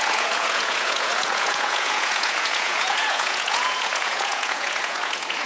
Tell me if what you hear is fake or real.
fake